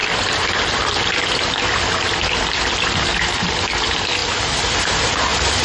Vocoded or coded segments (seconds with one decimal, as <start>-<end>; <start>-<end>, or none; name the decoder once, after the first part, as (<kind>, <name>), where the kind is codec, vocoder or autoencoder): none